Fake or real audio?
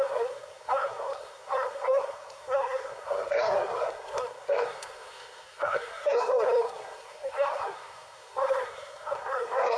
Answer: fake